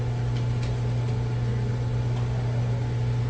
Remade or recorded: recorded